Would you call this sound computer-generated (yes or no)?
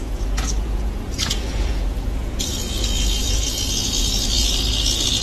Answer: yes